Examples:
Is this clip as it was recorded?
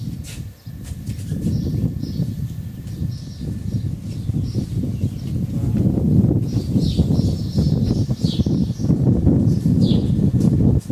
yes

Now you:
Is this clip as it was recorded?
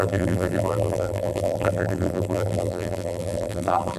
no